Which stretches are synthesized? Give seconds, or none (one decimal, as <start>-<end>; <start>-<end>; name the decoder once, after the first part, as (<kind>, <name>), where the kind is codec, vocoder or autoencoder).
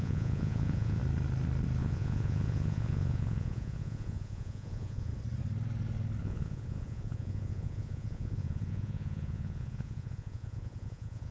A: 0.0-1.0 (vocoder, Vocos); 1.8-5.1; 6.2-11.3